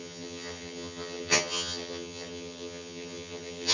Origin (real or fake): fake